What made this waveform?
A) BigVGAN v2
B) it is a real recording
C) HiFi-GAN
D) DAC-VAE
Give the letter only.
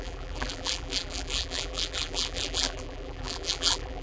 A